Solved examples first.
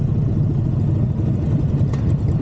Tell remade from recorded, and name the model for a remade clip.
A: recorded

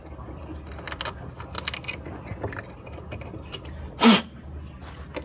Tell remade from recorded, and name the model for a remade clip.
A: recorded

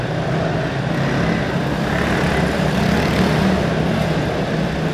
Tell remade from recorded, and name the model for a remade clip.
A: recorded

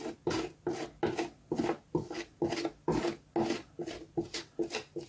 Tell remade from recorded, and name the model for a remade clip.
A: recorded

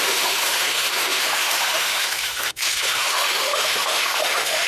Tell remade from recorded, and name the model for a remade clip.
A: remade, autoencoder, DAC-VAE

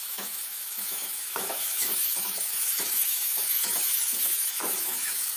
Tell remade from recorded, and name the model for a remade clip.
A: remade, autoencoder, DAC-VAE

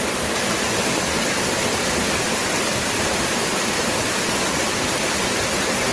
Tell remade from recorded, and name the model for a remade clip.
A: recorded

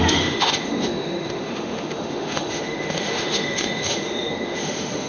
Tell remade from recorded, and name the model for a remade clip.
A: remade, autoencoder, DAC-VAE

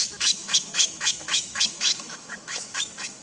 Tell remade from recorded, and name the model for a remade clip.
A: remade, autoencoder, DAC-VAE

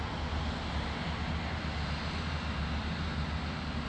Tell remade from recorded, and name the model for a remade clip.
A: recorded